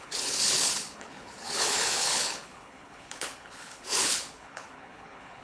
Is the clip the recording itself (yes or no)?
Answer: no